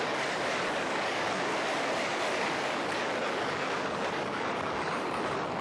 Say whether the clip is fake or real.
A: fake